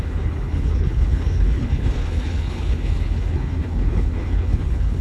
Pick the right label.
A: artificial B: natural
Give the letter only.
A